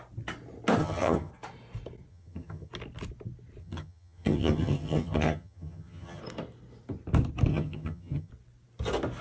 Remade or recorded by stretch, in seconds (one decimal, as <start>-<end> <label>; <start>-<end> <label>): 0.0-0.8 recorded; 0.8-1.3 remade; 1.3-2.1 recorded; 2.1-2.7 remade; 2.7-3.6 recorded; 3.6-6.2 remade; 6.2-7.5 recorded; 7.5-8.3 remade; 8.3-9.2 recorded